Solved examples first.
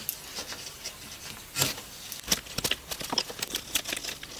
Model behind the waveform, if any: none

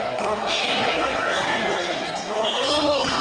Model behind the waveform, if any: codec, SNAC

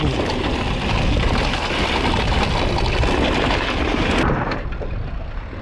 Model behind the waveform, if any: none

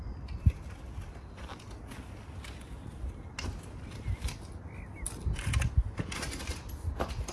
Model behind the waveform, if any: none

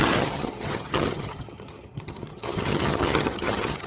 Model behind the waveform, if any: vocoder, HiFi-GAN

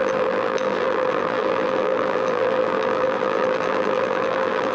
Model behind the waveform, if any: vocoder, BigVGAN v2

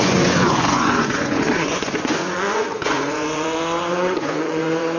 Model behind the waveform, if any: vocoder, Vocos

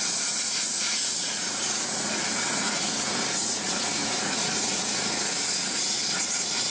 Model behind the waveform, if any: vocoder, Vocos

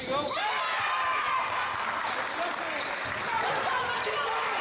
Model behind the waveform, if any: none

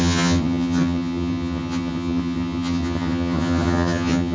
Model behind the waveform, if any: vocoder, HiFi-GAN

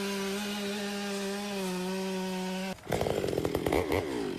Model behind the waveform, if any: none